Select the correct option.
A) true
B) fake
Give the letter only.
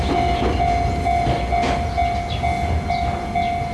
A